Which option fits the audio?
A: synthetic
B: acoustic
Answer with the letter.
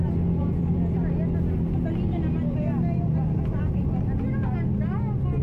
B